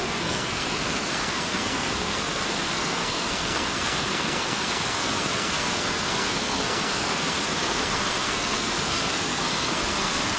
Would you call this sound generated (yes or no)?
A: yes